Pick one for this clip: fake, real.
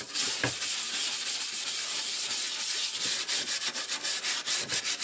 real